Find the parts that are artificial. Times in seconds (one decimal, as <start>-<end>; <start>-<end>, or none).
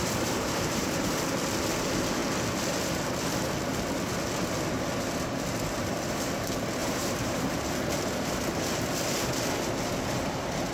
0.0-1.1; 6.8-7.7